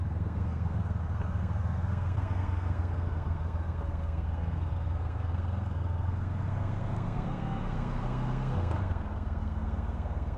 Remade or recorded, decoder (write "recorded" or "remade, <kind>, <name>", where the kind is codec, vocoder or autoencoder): remade, codec, SNAC